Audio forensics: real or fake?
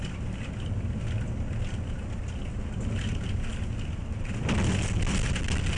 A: real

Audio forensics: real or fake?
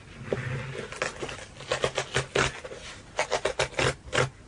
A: real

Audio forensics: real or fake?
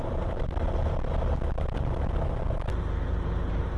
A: real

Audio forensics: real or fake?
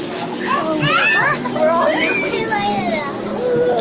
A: real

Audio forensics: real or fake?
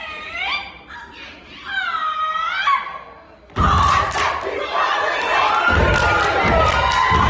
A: real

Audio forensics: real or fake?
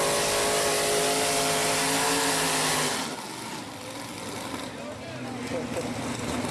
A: real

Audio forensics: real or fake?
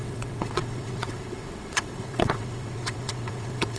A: fake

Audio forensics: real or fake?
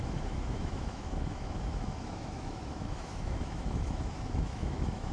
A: fake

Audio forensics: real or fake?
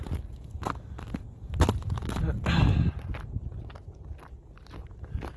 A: real